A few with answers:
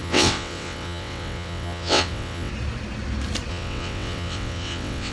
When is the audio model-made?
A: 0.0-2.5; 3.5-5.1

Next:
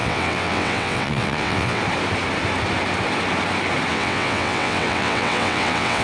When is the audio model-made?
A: 0.0-1.8; 3.9-6.0

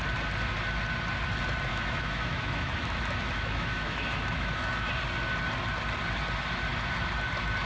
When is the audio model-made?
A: 1.7-4.9

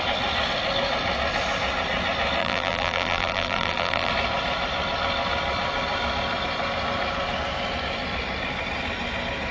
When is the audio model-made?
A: 2.4-4.1

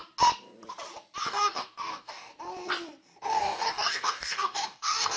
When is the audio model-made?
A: 1.2-2.3; 3.2-5.2

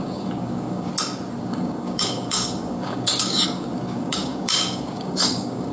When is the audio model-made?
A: 0.0-0.9; 1.4-5.7

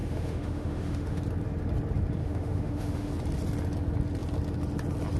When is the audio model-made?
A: 0.0-1.2; 2.2-3.1

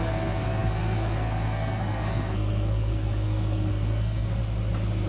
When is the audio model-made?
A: 0.0-4.4